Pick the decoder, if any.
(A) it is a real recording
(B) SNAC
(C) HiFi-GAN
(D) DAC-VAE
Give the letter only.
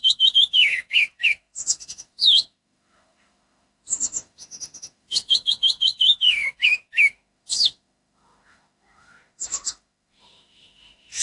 D